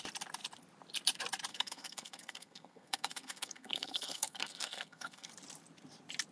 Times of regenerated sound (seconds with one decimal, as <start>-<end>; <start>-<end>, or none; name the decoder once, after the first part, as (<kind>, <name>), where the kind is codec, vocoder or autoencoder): 1.5-5.3 (codec, SNAC)